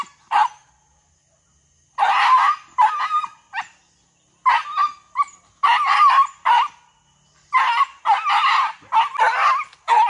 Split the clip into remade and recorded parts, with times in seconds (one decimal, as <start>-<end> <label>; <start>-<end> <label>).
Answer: 0.0-10.1 recorded

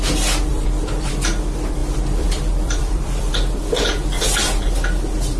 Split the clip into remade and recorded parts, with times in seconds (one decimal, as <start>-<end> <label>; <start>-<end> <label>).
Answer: 0.0-0.5 recorded; 0.5-1.1 remade; 1.1-1.8 recorded; 1.8-3.3 remade; 3.3-5.4 recorded

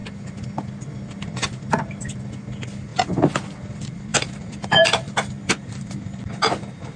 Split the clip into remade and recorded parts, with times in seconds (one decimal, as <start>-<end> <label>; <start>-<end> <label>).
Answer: 0.0-4.1 recorded; 4.1-6.3 remade; 6.3-7.0 recorded